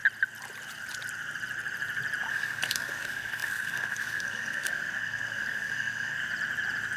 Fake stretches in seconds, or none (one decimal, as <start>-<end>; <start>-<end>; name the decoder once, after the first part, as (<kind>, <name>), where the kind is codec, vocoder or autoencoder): 2.3-6.2 (codec, SNAC)